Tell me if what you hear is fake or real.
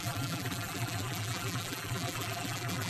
fake